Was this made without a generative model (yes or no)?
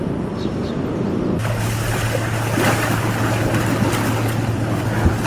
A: yes